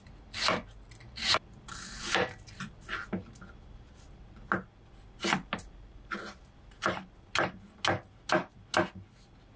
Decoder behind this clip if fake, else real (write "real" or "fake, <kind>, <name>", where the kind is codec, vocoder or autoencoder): real